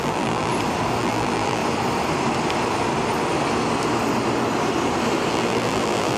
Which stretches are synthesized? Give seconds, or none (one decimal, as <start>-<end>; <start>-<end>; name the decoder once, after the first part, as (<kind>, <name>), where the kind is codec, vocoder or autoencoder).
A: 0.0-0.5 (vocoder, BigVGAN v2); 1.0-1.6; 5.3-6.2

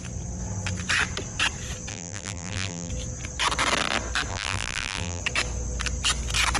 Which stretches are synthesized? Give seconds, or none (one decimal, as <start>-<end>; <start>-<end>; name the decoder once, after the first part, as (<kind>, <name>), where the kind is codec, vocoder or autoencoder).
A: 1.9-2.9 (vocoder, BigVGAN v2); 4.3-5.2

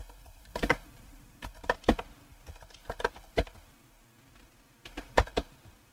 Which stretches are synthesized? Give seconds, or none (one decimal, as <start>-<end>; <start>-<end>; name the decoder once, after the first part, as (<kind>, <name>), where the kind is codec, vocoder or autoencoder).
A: 0.0-1.5 (vocoder, BigVGAN v2); 5.0-5.9